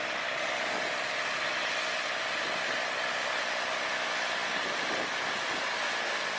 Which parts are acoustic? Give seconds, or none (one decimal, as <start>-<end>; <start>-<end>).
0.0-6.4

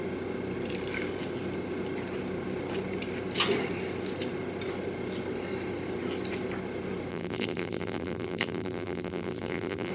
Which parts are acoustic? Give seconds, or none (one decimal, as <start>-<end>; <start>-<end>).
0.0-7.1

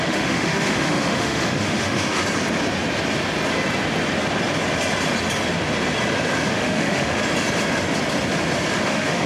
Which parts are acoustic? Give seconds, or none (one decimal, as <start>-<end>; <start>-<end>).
2.2-6.5; 7.2-8.8

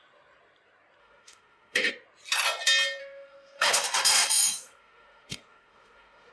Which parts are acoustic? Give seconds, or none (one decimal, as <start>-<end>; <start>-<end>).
0.0-1.0; 1.9-3.0